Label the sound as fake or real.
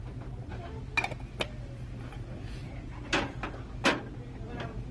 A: real